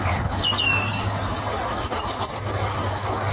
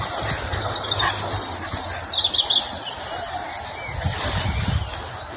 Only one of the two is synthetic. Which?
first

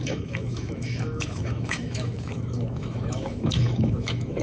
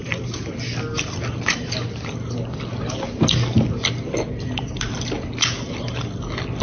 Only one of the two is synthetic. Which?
first